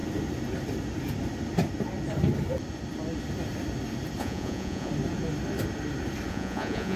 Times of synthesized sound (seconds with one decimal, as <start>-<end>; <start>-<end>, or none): 4.2-4.9; 6.3-7.0